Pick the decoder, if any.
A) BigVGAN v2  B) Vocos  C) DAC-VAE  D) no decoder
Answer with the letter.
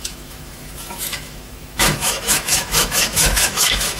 C